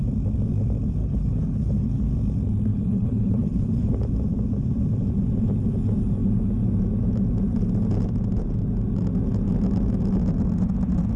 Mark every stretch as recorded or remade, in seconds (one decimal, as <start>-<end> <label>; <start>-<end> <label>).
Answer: 0.0-1.0 recorded; 1.0-2.1 remade; 2.1-2.7 recorded; 2.7-3.9 remade; 3.9-11.2 recorded